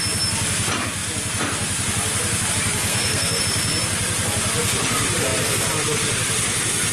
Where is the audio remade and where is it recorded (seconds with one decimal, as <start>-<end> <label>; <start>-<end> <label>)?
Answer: 0.0-2.9 recorded; 2.9-3.4 remade; 3.4-6.9 recorded